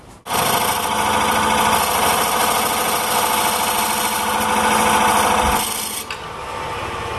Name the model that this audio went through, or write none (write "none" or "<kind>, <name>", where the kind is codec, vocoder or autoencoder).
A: none